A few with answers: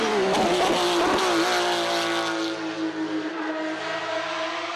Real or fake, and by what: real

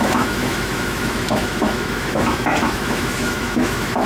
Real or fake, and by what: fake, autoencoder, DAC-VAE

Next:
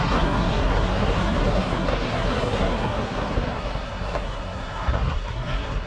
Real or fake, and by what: fake, codec, SNAC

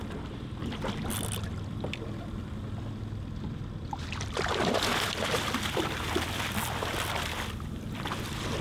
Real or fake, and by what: real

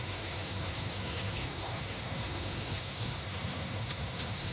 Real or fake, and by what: fake, codec, SNAC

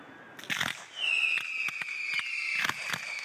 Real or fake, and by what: real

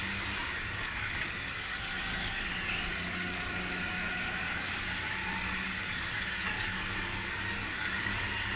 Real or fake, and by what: fake, codec, DAC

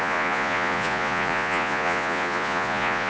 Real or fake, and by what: fake, vocoder, Vocos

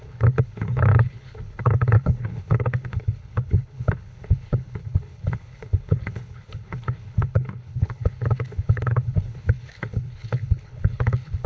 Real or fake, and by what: fake, codec, HILCodec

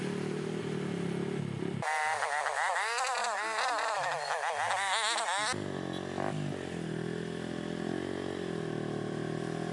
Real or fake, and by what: real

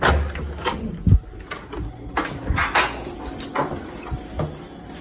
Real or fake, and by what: real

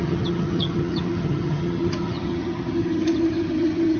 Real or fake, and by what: fake, vocoder, HiFi-GAN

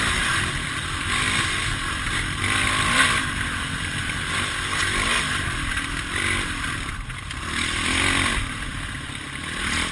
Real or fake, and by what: real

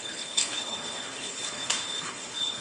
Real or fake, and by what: fake, codec, HILCodec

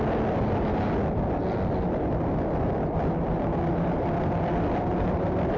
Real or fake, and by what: real